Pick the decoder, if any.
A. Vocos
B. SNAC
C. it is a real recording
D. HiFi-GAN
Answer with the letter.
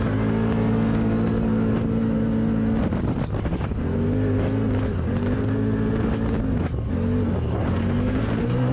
C